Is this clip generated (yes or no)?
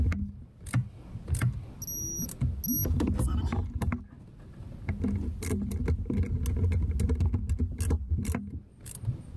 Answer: no